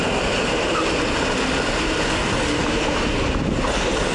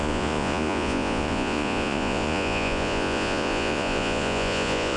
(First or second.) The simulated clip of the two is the second